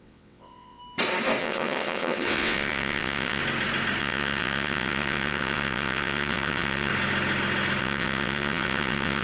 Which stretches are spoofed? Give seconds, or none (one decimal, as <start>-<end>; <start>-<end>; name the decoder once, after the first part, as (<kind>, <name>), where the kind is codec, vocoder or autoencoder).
0.0-0.8 (vocoder, WaveNeXt); 1.4-3.4; 4.0-6.9; 7.8-9.2